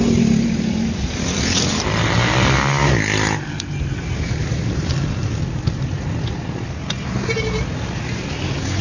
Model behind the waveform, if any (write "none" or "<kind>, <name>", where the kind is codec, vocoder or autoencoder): none